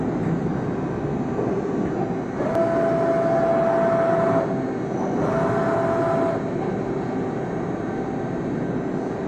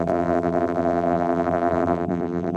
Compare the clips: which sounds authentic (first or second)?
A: first